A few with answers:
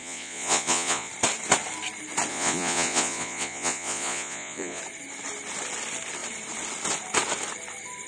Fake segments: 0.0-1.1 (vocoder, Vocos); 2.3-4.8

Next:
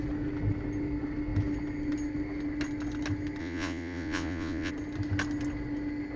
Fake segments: 3.4-4.7 (vocoder, Vocos)

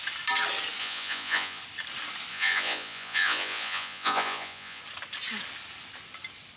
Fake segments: 0.8-1.6 (vocoder, Vocos); 2.3-4.8